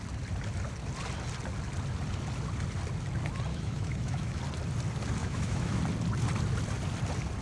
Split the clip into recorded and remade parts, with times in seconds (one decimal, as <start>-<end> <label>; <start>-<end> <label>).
0.0-3.5 recorded; 3.5-4.4 remade; 4.4-5.2 recorded; 5.2-5.8 remade; 5.8-7.4 recorded